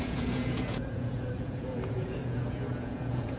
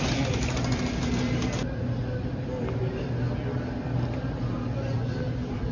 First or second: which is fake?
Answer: first